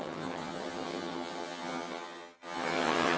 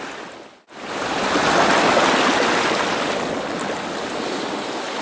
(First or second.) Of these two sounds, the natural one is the second